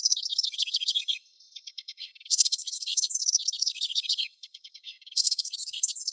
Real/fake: fake